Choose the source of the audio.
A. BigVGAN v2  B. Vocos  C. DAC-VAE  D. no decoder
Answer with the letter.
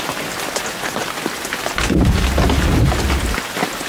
D